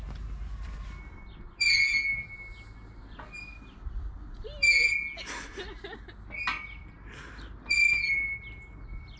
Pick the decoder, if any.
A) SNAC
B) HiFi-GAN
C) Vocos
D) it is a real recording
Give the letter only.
D